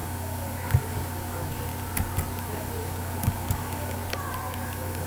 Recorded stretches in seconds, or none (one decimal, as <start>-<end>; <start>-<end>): 1.7-2.4; 4.0-4.5